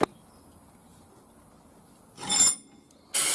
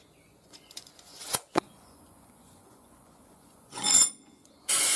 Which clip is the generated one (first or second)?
second